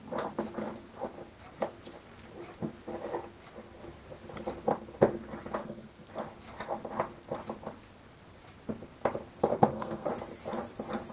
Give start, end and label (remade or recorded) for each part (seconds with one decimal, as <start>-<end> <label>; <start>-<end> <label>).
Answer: 0.0-5.6 recorded; 5.6-6.1 remade; 6.1-9.5 recorded; 9.5-10.1 remade; 10.1-11.1 recorded